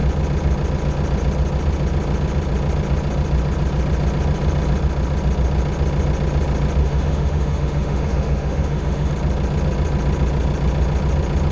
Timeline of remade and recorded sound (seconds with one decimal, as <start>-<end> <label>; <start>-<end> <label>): 0.0-6.8 recorded; 6.8-9.1 remade; 9.1-11.5 recorded